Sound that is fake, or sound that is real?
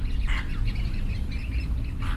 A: real